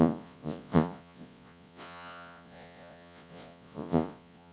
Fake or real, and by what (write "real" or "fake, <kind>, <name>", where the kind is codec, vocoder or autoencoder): fake, vocoder, Vocos